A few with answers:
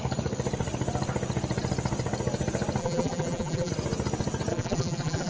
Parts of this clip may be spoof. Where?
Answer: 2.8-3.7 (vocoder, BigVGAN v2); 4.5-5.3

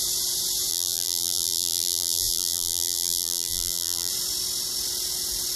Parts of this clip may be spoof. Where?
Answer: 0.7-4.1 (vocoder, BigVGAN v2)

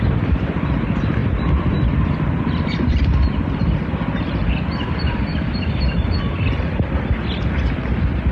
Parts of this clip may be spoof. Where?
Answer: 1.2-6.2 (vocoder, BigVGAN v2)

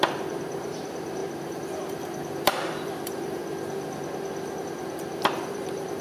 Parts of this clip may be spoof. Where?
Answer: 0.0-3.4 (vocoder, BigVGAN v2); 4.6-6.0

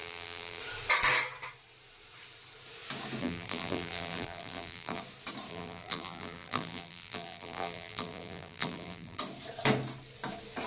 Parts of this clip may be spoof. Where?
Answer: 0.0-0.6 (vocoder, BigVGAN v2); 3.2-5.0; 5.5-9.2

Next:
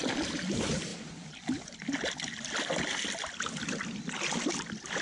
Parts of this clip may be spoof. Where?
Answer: 0.0-5.0 (vocoder, BigVGAN v2)

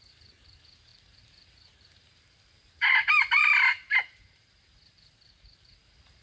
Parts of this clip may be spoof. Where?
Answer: 0.0-6.2 (vocoder, BigVGAN v2)

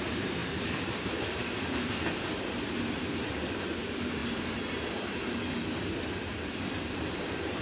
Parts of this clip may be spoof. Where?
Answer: 0.0-0.4 (vocoder, BigVGAN v2); 2.6-4.2; 6.9-7.6